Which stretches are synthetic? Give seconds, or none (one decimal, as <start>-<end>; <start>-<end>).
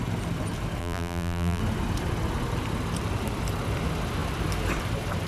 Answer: 0.8-1.6